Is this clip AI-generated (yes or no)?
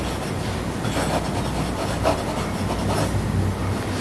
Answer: no